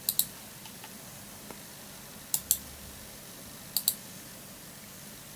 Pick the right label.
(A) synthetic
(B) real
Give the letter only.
B